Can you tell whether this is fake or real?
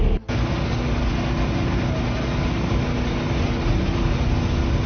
real